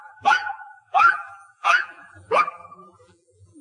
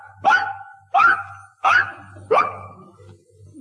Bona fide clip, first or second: second